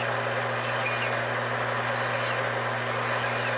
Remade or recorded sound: recorded